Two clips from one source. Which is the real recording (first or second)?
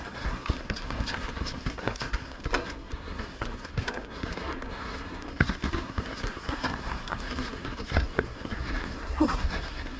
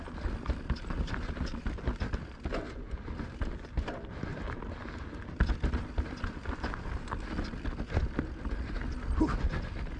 second